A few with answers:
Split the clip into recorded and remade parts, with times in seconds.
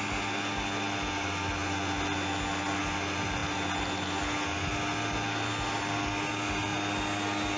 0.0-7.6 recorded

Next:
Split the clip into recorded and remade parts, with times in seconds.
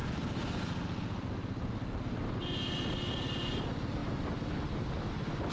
0.0-5.5 recorded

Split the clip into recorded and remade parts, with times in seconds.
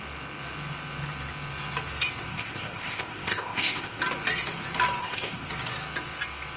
0.0-2.3 recorded; 2.3-4.0 remade; 4.0-5.0 recorded; 5.0-5.5 remade; 5.5-6.6 recorded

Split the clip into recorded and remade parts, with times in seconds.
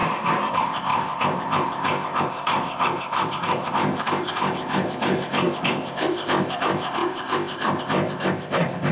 0.0-0.5 recorded; 0.5-8.9 remade